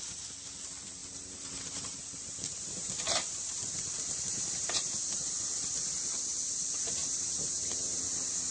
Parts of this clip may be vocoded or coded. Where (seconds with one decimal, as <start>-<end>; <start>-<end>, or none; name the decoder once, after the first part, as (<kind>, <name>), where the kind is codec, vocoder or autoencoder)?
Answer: 1.0-5.3 (vocoder, BigVGAN v2); 7.0-8.0